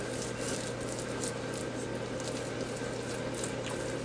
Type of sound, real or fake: real